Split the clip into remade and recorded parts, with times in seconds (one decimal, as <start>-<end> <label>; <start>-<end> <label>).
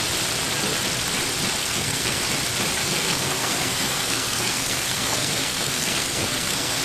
0.0-1.6 recorded; 1.6-2.2 remade; 2.2-2.8 recorded; 2.8-6.8 remade